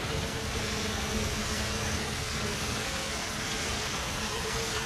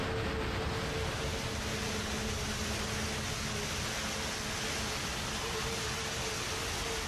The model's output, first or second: first